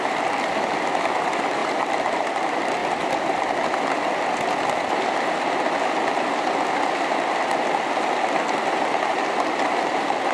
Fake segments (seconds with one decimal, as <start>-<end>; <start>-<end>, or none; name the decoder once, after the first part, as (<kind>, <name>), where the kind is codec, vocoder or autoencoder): none